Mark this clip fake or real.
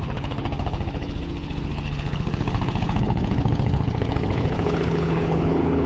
fake